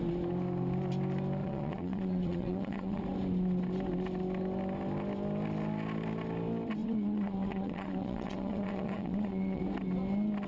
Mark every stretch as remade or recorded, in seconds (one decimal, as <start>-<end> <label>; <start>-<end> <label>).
0.0-1.4 recorded; 1.4-3.0 remade; 3.0-6.8 recorded; 6.8-9.6 remade; 9.6-10.5 recorded